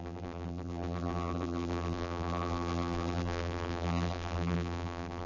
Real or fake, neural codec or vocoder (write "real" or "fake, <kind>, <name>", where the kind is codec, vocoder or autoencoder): fake, vocoder, BigVGAN v2